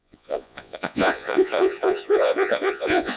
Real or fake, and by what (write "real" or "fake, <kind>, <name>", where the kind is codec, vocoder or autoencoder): fake, vocoder, Vocos